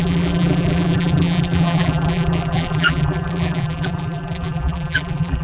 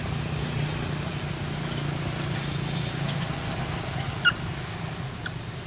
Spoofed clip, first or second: first